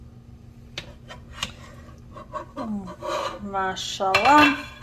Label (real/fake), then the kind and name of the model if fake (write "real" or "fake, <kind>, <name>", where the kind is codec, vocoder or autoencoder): real